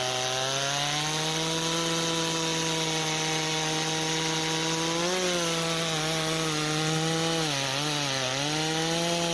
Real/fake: real